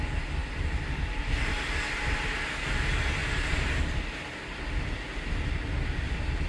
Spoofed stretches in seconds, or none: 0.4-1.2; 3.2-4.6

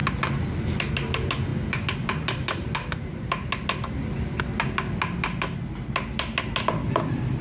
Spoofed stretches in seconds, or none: none

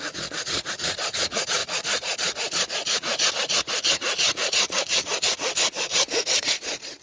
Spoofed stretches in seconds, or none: 0.0-7.0

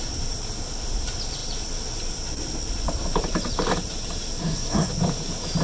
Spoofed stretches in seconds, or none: 4.4-4.9

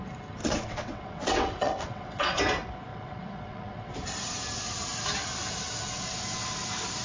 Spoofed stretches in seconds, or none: 0.4-2.4; 2.9-3.9